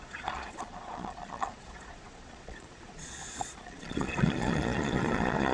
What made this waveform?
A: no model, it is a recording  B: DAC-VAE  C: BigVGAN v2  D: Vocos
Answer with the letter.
D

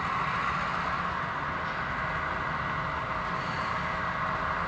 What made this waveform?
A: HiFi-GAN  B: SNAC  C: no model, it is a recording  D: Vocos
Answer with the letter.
C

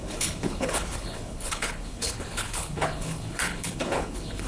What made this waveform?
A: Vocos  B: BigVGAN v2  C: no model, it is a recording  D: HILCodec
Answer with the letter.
D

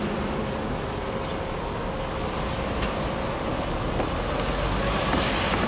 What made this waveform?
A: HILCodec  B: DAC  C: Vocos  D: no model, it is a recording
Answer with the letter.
D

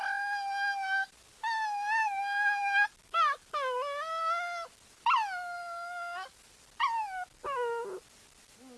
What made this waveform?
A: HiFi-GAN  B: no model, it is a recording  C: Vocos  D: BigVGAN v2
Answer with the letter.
B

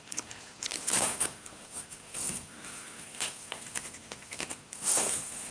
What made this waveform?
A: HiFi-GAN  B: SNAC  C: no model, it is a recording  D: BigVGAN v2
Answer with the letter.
B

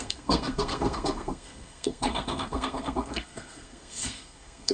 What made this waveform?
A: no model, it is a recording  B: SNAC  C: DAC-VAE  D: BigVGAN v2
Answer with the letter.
B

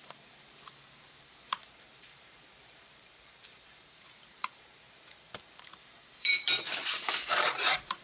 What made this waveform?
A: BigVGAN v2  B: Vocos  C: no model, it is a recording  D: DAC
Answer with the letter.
A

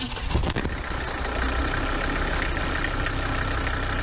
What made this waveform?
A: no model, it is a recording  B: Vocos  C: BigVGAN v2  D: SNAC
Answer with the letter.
A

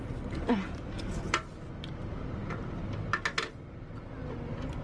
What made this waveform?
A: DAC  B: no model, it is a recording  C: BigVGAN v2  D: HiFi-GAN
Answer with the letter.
B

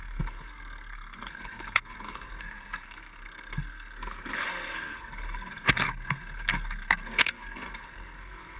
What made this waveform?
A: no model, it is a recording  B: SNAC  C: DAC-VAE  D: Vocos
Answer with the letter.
B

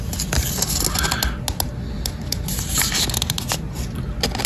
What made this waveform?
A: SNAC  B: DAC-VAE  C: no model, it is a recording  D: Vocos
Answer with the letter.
C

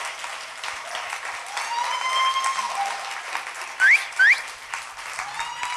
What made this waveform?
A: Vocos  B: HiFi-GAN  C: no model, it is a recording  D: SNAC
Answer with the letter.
C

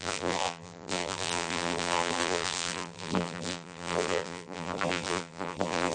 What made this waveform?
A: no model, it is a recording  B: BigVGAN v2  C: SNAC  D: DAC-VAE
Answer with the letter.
B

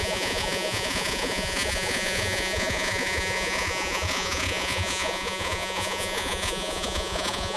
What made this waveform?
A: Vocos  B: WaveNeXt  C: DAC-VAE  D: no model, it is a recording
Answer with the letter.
A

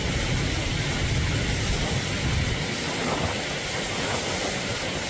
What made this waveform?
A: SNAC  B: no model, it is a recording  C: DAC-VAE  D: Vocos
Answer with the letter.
B